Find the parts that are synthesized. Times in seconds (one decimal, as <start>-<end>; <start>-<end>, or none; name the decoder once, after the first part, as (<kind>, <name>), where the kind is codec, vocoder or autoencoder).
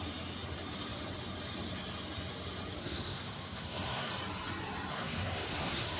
2.8-4.1 (codec, SNAC); 4.9-6.0